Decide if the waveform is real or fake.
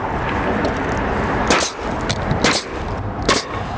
real